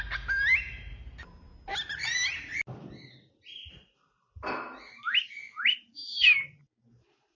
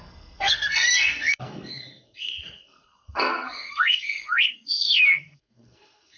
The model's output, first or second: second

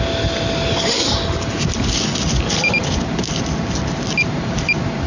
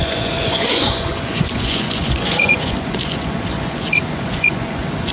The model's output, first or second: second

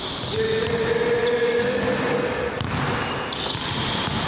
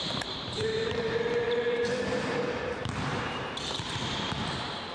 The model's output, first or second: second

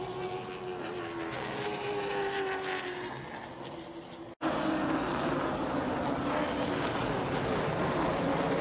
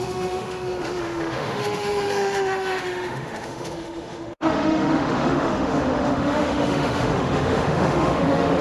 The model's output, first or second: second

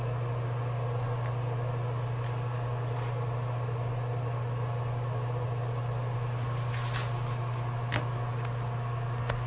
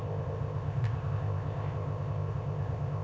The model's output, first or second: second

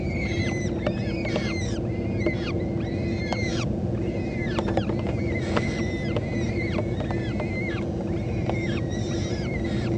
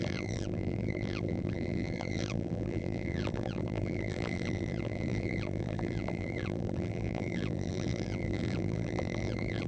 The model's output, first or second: second